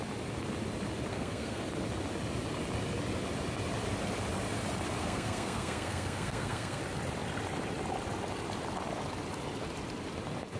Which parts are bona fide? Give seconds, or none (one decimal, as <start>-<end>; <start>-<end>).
0.0-1.1; 1.6-5.0; 6.8-10.6